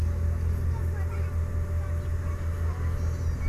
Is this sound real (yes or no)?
yes